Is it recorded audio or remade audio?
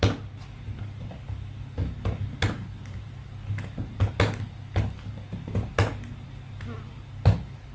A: recorded